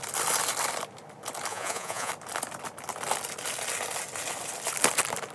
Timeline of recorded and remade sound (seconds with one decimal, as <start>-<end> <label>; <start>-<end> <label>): 0.0-1.5 recorded; 1.5-2.1 remade; 2.1-5.3 recorded